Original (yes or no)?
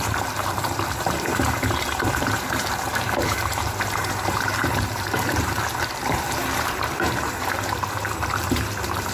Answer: no